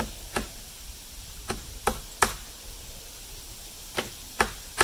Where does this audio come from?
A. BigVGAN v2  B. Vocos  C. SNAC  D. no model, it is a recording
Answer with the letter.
D